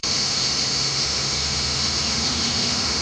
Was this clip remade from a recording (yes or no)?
yes